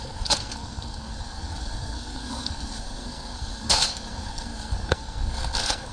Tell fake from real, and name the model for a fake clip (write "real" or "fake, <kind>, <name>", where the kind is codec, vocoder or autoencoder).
fake, codec, SNAC